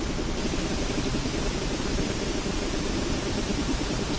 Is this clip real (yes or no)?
yes